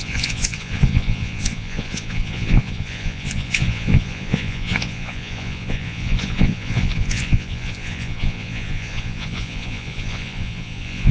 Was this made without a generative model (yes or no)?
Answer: no